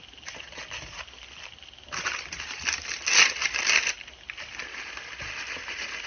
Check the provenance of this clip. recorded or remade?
recorded